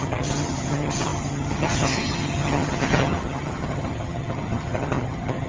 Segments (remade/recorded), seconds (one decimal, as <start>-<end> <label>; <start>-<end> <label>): 0.0-5.5 remade